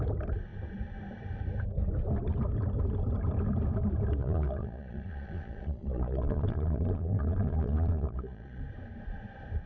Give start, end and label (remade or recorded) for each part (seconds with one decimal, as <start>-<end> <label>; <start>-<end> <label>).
0.0-4.2 recorded; 4.2-8.6 remade; 8.6-9.7 recorded